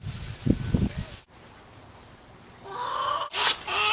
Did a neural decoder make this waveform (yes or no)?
no